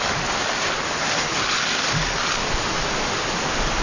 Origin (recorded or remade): remade